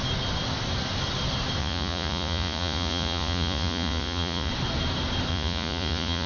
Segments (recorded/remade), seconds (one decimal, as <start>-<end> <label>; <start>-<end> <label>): 0.0-1.6 recorded; 1.6-4.5 remade; 4.5-5.3 recorded; 5.3-6.3 remade